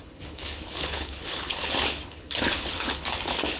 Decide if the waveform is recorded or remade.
remade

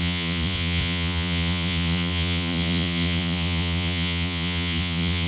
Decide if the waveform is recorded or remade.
remade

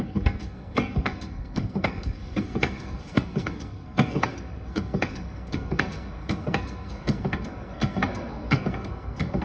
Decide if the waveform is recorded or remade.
remade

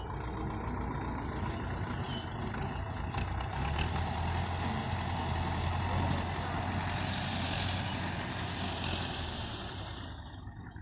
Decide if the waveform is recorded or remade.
recorded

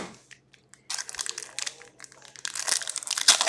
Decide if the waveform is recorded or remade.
recorded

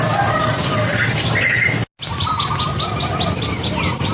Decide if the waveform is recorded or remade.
recorded